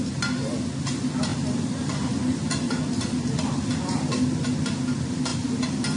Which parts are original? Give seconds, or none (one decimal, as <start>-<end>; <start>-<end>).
0.0-1.3; 4.2-6.0